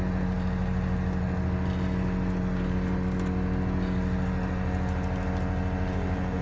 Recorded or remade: recorded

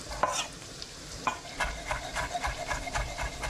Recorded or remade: remade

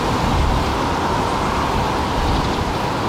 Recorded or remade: recorded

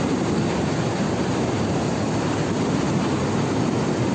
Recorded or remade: recorded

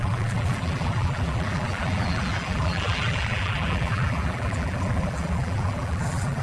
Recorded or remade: remade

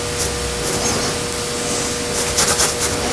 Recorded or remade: recorded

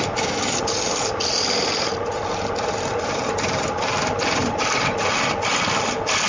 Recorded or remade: recorded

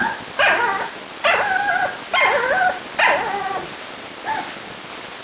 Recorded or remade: recorded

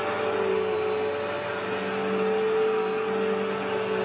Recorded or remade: recorded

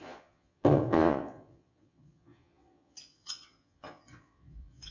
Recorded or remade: remade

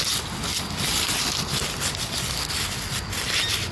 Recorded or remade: recorded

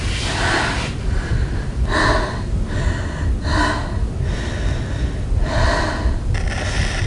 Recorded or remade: recorded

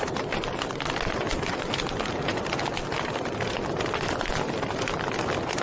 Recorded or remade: recorded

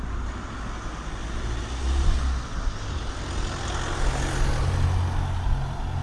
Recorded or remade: recorded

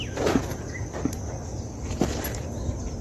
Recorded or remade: recorded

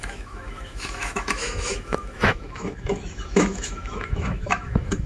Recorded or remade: remade